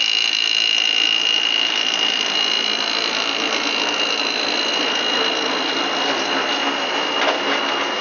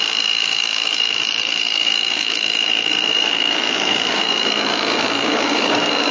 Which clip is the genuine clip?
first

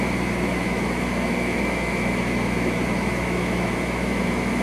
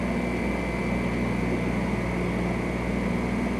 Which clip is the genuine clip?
second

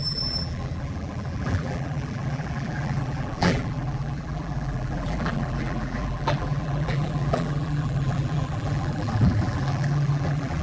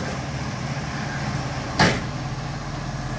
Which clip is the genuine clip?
second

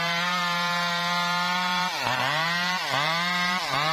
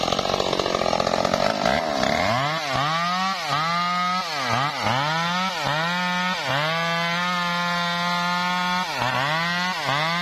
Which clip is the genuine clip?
second